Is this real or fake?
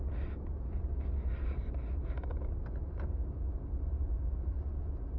real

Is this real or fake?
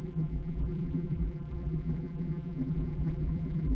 fake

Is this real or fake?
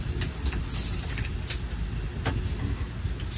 real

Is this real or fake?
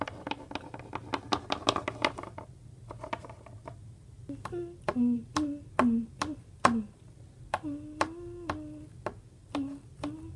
real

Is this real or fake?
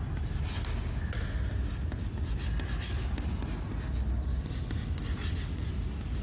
real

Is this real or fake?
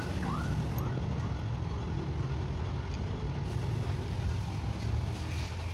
real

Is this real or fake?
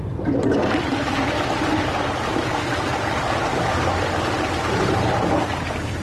fake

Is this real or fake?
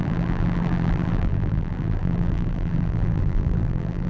fake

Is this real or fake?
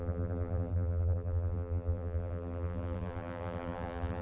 fake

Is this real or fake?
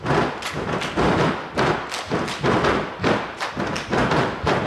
real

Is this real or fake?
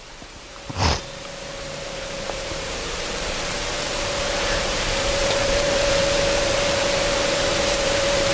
fake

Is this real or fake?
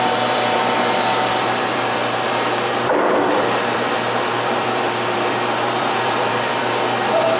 fake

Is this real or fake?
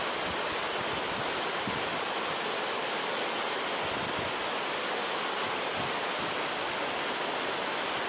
real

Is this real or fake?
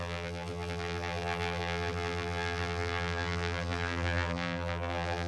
fake